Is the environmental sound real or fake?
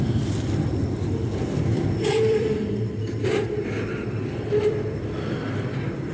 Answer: fake